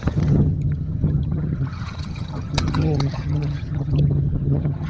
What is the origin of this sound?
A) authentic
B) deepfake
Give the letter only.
B